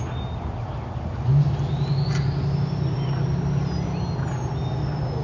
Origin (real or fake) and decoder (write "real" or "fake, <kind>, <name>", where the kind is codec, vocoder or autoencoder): real